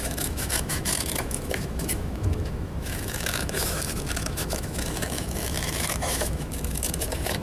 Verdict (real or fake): fake